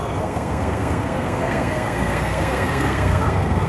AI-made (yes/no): yes